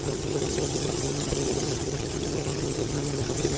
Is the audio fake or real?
fake